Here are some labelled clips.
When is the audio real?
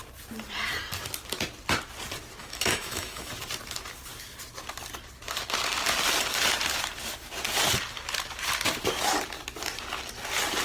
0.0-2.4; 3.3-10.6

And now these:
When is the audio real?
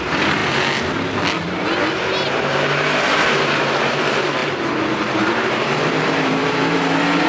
0.4-2.3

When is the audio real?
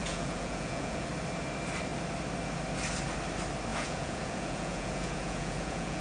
1.1-3.7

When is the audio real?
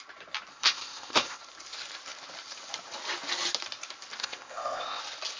0.0-0.5; 1.4-4.2; 5.0-5.4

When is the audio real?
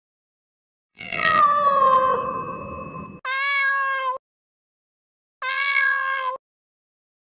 0.0-0.9; 1.4-5.5; 6.3-7.3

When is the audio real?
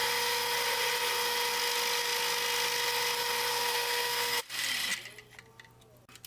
0.0-3.5; 4.4-6.3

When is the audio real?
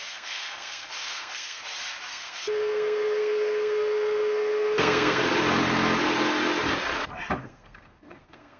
1.6-2.1; 5.2-7.4